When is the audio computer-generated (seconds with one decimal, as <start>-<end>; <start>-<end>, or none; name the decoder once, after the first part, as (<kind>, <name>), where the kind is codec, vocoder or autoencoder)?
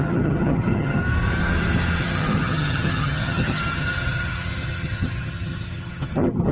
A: 0.0-1.0 (vocoder, HiFi-GAN); 2.0-6.5